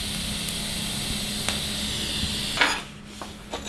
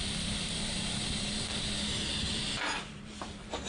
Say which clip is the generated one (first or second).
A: second